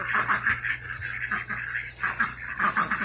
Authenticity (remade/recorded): recorded